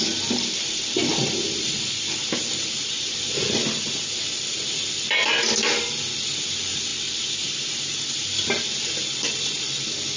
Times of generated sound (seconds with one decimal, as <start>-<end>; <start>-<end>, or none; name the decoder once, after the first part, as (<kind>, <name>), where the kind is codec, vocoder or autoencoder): 0.0-10.2 (vocoder, BigVGAN v2)